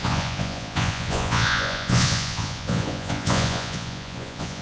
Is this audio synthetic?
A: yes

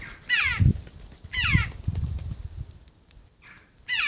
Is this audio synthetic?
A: no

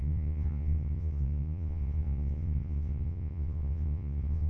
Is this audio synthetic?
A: yes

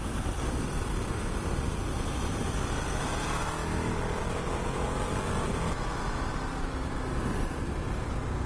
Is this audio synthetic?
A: no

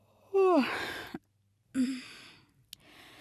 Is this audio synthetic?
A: no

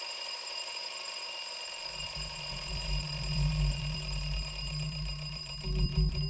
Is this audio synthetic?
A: yes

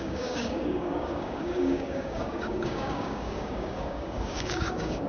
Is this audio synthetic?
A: yes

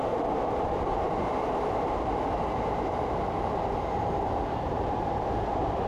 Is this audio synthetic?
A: no